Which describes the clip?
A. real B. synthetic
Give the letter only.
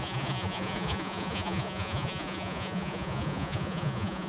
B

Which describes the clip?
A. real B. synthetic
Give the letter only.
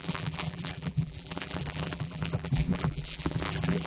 B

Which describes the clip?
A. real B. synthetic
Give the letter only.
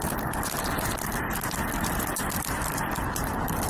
A